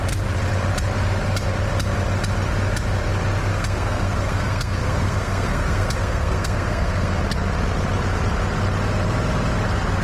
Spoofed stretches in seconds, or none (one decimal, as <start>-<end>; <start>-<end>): 3.5-7.2

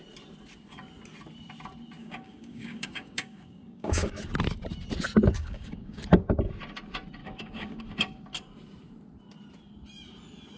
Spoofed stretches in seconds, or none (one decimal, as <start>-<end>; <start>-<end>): 2.0-4.1; 5.4-6.0; 7.2-7.8